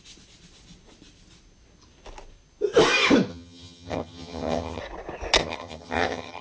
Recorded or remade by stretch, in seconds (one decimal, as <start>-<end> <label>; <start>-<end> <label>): 0.0-3.3 recorded; 3.3-4.8 remade; 4.8-5.4 recorded; 5.4-6.4 remade